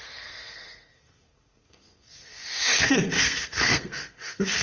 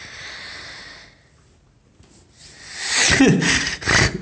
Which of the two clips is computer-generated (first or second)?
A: first